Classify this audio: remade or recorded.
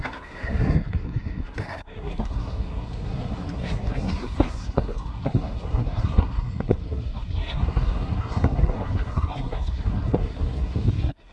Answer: remade